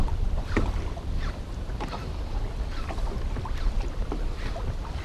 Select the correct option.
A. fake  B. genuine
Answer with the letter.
B